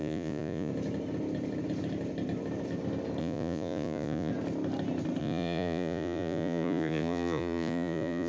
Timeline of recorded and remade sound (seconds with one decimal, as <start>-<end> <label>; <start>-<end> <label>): 0.0-0.7 remade; 0.7-3.2 recorded; 3.2-4.3 remade; 4.3-5.2 recorded; 5.2-8.3 remade